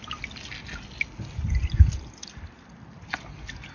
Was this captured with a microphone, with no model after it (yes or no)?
yes